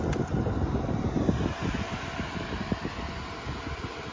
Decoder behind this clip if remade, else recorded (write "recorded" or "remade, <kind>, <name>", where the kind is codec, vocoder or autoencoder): recorded